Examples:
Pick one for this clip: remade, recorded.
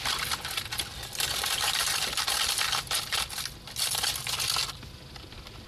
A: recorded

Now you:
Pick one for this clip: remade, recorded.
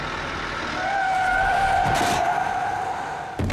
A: recorded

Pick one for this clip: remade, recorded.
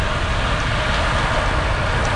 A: recorded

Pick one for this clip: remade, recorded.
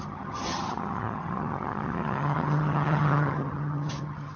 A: remade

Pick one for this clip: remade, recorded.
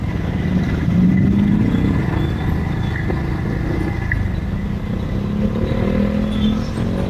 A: recorded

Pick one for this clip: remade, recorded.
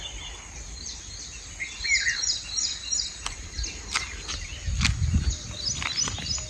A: recorded